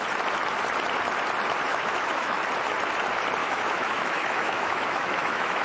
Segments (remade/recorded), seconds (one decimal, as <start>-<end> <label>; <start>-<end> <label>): 0.0-1.7 recorded; 1.7-2.4 remade; 2.4-3.4 recorded; 3.4-5.6 remade